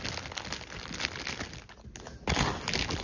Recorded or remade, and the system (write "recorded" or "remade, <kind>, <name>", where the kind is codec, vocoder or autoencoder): recorded